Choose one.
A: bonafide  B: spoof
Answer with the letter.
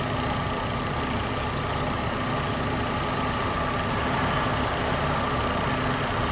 A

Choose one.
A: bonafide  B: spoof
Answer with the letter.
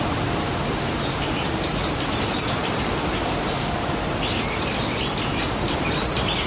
A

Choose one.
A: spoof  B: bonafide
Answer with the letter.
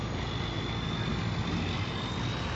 B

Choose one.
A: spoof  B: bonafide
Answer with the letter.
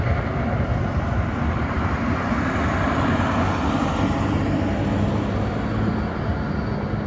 B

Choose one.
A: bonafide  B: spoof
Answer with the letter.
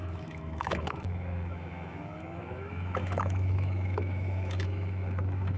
B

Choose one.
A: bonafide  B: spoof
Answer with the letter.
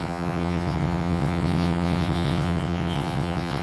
B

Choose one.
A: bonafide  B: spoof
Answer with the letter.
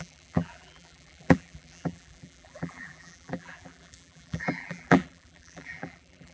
B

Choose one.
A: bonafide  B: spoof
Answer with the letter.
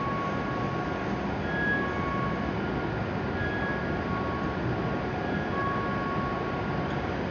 A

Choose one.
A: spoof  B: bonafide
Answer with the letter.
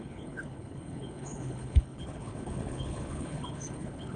A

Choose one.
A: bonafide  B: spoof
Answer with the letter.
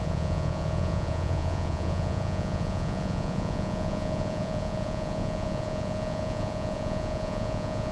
B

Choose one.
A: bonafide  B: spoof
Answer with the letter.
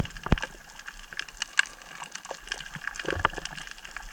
A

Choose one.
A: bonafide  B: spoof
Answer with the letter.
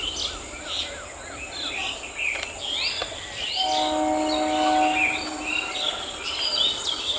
A